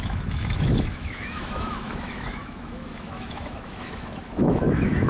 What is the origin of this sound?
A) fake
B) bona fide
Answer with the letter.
A